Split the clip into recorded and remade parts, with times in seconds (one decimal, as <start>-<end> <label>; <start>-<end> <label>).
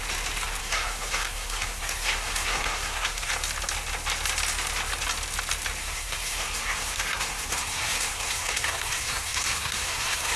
0.0-0.6 recorded; 0.6-3.3 remade; 3.3-5.8 recorded; 5.8-10.4 remade